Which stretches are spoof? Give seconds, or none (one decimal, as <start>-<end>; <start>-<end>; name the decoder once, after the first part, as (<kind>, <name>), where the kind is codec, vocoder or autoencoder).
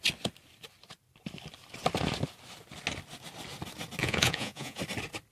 4.0-4.8 (vocoder, Vocos)